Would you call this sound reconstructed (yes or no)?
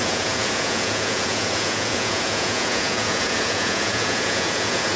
yes